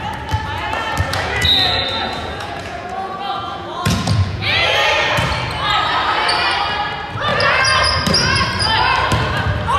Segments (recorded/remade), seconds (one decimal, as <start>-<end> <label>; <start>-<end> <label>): 0.0-1.1 recorded; 1.1-4.6 remade; 4.6-9.8 recorded